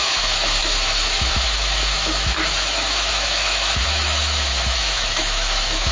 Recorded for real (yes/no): no